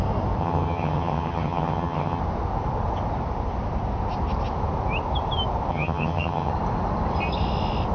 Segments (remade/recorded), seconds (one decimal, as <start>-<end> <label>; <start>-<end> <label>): 0.0-0.4 recorded; 0.4-2.2 remade; 2.2-5.7 recorded; 5.7-6.5 remade; 6.5-7.9 recorded